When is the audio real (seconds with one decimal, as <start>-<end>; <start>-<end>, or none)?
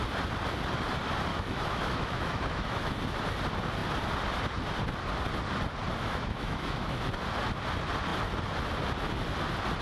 0.0-1.3; 2.9-6.0; 7.1-9.8